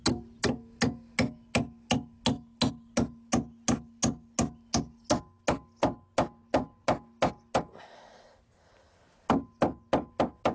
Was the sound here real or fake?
real